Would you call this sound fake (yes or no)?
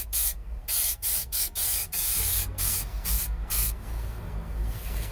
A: yes